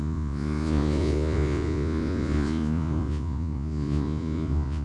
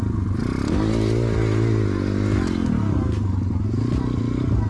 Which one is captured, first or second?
second